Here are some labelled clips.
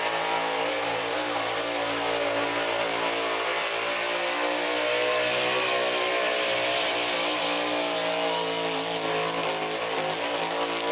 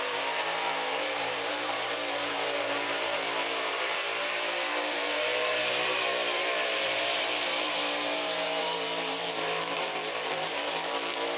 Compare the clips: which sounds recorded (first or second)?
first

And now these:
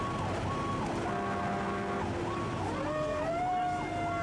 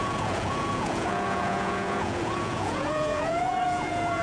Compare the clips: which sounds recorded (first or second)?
first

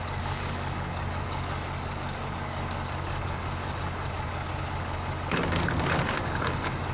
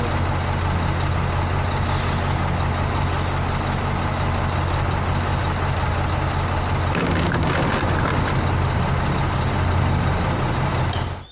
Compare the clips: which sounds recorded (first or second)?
second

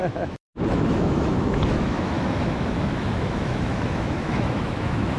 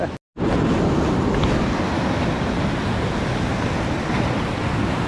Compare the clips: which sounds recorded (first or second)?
second